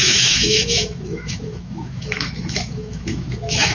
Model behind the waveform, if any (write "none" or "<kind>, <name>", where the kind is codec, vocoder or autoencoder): autoencoder, DAC-VAE